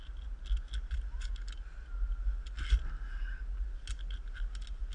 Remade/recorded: recorded